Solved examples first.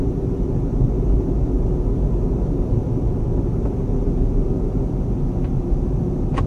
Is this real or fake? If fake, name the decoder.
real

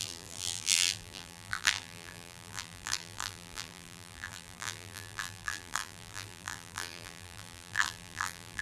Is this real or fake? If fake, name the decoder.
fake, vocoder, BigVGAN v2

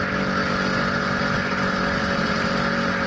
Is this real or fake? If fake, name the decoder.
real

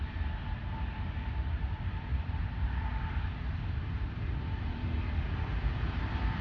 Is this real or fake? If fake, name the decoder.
fake, vocoder, BigVGAN v2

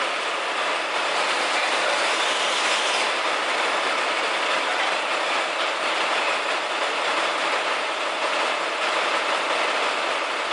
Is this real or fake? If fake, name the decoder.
real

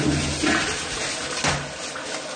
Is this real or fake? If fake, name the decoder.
real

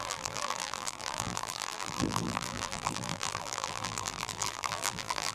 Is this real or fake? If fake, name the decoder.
fake, vocoder, BigVGAN v2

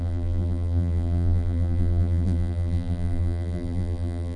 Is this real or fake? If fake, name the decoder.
fake, vocoder, BigVGAN v2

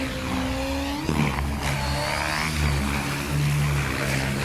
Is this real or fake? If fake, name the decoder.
real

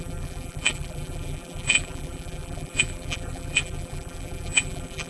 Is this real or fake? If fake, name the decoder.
fake, vocoder, BigVGAN v2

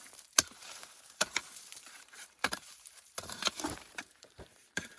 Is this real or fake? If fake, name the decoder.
fake, vocoder, BigVGAN v2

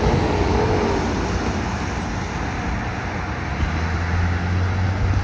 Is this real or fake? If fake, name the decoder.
real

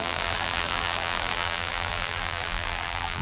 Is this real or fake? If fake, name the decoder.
fake, vocoder, BigVGAN v2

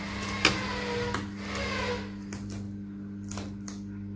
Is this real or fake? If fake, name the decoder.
real